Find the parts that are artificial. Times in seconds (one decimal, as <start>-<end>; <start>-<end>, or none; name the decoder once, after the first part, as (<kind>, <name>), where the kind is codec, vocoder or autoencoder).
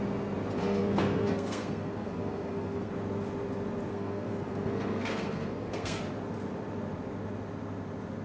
0.6-2.9 (codec, SNAC); 3.9-6.0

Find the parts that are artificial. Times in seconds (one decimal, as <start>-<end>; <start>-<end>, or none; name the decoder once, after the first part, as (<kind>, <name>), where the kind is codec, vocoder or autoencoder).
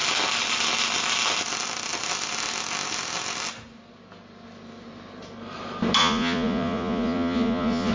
6.0-7.9 (vocoder, Vocos)